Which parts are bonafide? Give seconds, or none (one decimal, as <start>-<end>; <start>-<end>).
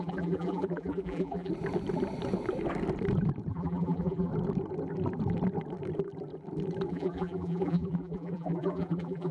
1.5-3.5; 4.3-6.9